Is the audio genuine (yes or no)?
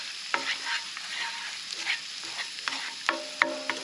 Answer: yes